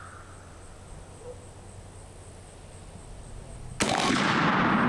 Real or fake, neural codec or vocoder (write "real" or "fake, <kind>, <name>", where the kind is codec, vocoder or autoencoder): real